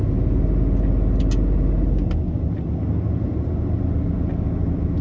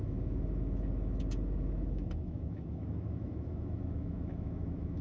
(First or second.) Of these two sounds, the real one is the first